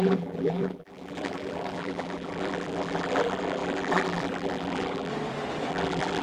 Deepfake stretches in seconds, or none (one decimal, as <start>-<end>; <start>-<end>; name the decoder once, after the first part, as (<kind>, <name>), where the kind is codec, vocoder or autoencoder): 0.0-5.1 (vocoder, BigVGAN v2); 5.7-6.2